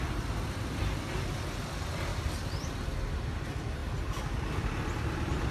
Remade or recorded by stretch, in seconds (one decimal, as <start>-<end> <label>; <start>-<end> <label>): 0.0-5.5 recorded